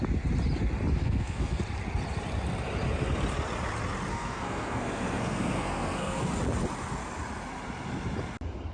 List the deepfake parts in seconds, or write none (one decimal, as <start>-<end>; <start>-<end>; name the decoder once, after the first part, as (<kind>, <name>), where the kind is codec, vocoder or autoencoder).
1.0-1.6 (codec, SNAC); 4.1-6.2